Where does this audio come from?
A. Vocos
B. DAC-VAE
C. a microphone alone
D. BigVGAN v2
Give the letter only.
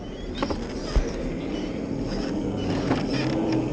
C